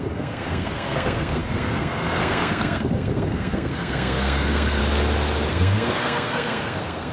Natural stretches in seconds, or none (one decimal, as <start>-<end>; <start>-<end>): 4.8-5.5

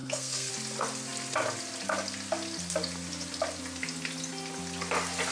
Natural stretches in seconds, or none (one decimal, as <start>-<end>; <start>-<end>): 0.5-5.3

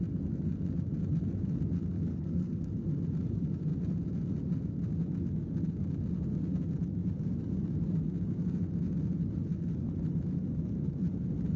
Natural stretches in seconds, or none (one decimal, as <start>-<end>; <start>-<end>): 0.0-2.1; 2.7-11.6

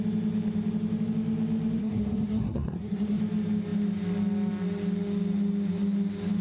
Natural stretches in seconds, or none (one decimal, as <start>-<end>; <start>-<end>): 0.0-1.8; 3.2-6.4

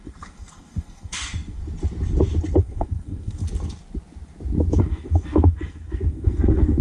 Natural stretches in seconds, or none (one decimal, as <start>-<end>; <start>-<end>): 1.6-2.6; 3.4-4.8